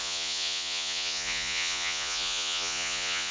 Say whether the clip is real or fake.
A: fake